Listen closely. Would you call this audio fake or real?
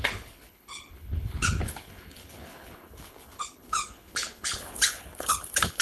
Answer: fake